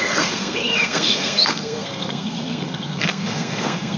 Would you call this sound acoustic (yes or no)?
no